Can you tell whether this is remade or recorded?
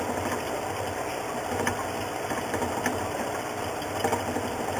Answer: recorded